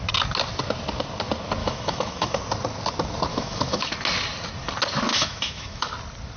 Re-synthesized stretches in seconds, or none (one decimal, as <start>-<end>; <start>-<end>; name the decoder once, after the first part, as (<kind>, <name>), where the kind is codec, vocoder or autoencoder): 1.6-2.4 (autoencoder, DAC-VAE); 3.3-3.9; 5.1-5.9